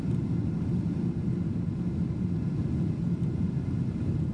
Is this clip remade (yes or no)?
no